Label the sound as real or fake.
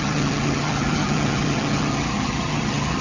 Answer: fake